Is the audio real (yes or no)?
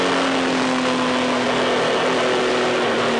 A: yes